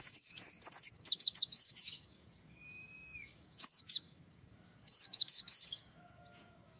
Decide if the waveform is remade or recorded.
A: remade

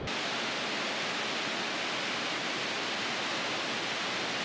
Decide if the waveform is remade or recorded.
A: recorded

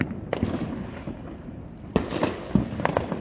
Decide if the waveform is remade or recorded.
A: recorded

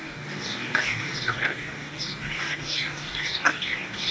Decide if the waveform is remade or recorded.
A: remade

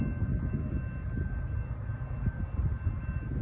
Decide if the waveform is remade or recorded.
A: recorded